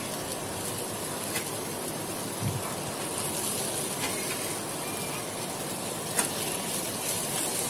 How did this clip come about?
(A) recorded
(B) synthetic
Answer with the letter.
A